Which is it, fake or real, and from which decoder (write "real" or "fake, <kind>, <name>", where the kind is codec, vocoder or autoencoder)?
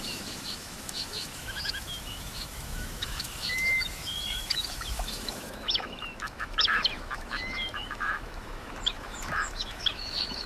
fake, autoencoder, DAC-VAE